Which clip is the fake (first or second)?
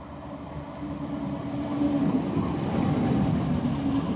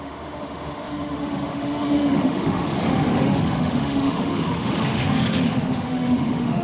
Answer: second